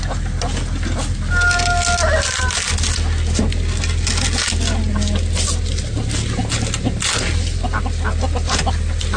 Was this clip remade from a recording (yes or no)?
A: no